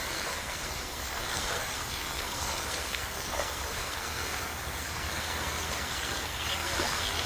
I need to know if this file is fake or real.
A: fake